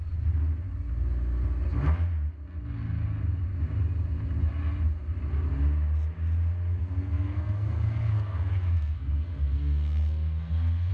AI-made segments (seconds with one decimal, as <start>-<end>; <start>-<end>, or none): 6.8-10.9